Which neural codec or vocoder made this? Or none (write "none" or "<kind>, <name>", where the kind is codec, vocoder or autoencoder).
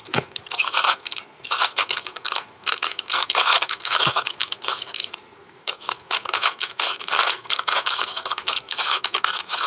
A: codec, SNAC